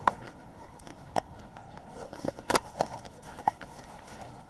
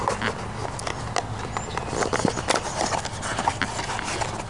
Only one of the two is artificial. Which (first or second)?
first